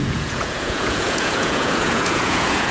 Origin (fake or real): fake